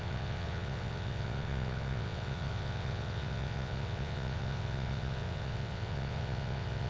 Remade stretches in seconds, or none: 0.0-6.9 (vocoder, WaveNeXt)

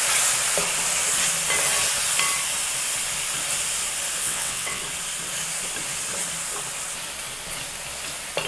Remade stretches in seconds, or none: 4.2-4.8 (vocoder, WaveNeXt)